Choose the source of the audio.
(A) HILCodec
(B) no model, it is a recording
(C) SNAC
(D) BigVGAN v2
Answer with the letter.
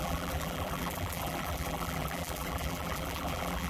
D